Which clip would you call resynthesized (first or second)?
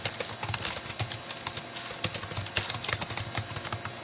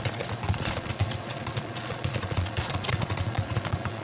second